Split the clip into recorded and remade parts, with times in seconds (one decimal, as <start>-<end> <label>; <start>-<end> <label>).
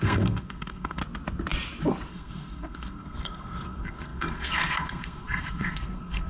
0.0-1.0 remade; 1.0-2.1 recorded; 2.1-6.3 remade